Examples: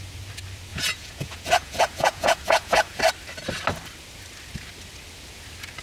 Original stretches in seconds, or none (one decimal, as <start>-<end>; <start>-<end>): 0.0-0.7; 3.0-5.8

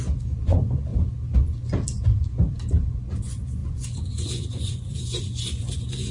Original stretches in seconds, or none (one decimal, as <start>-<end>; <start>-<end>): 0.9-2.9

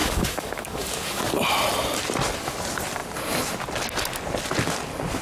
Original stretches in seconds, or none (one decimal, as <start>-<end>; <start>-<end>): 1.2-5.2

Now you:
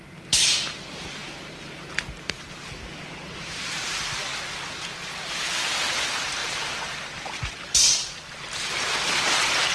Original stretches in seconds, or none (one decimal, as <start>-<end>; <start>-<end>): 4.3-5.4

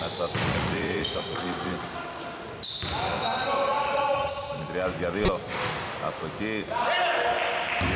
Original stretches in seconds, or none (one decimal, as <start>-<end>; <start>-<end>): 0.0-0.5; 1.7-3.7; 4.6-8.0

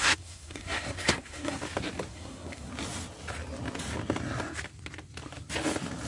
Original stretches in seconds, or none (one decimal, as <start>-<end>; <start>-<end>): 1.6-2.1; 2.7-6.1

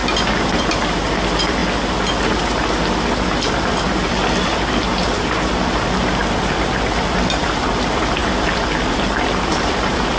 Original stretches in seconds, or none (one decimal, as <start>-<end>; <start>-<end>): 1.6-3.5